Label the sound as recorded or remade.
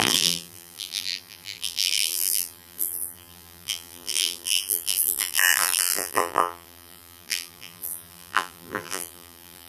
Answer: remade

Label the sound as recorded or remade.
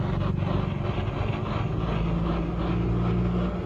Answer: recorded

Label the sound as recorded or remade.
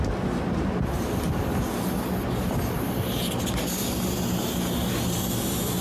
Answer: recorded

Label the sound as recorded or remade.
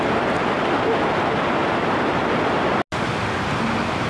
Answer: recorded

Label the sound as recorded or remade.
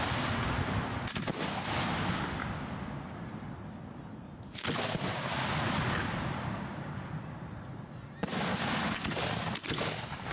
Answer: recorded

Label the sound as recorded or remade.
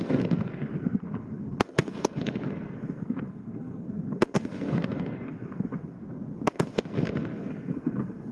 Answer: remade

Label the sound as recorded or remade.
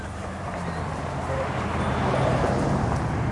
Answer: recorded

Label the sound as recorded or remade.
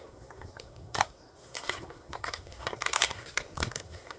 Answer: remade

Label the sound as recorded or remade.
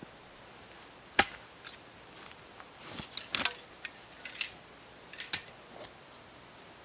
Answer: recorded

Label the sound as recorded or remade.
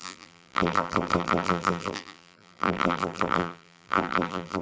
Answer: remade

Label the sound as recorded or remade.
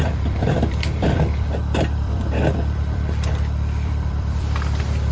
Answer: remade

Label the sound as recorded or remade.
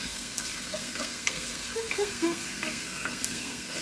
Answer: remade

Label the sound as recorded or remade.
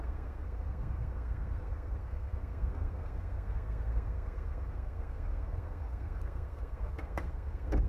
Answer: remade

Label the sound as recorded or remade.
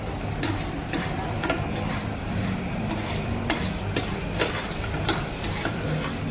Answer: remade